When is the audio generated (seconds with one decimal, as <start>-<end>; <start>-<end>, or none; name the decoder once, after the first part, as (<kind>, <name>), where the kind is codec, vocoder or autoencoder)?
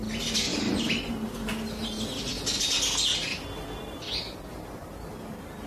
0.5-1.1 (vocoder, BigVGAN v2)